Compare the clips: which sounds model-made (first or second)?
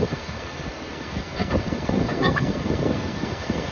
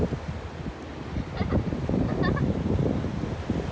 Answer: first